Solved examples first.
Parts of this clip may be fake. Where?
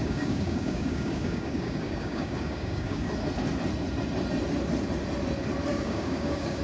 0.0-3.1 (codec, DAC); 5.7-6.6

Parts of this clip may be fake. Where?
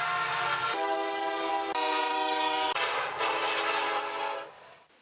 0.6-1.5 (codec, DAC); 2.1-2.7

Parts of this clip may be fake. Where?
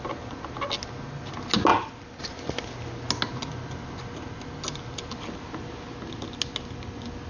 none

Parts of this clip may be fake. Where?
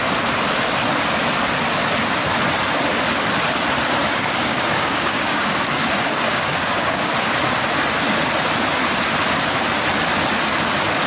4.0-7.1 (codec, DAC)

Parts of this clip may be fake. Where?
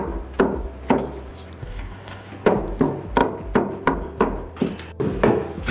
1.6-2.3 (codec, DAC)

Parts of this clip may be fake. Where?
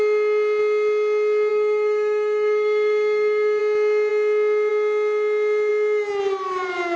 1.5-3.6 (codec, DAC)